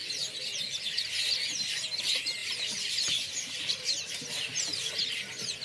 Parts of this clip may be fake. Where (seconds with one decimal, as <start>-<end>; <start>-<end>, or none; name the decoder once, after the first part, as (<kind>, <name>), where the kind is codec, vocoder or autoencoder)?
0.0-1.1 (vocoder, BigVGAN v2); 2.4-4.9

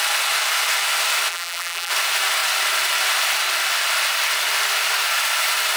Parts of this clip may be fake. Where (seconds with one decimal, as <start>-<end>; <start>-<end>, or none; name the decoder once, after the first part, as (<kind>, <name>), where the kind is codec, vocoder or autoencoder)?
1.3-1.9 (vocoder, BigVGAN v2)

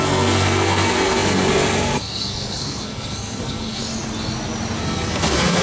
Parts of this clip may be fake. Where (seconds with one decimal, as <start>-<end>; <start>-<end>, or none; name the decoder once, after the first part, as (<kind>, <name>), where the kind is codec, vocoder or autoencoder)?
0.0-3.8 (codec, SNAC); 4.8-5.6